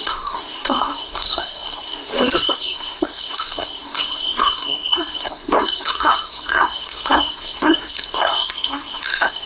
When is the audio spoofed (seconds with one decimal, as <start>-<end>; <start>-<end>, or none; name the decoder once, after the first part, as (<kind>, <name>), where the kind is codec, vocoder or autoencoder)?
0.0-9.5 (codec, SNAC)